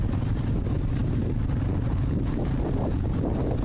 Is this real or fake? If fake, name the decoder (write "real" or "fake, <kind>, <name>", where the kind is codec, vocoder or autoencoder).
real